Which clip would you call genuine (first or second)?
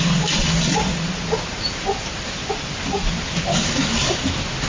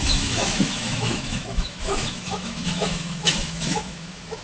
first